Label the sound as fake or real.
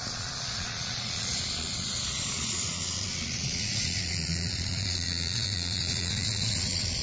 fake